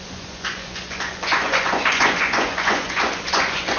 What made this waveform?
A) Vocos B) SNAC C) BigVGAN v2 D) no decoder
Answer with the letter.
A